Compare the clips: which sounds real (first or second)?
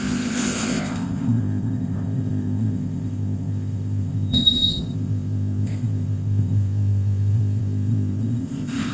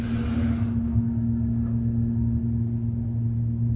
second